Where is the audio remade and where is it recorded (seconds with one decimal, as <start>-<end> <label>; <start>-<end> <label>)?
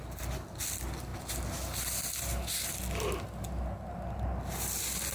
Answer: 0.0-5.1 recorded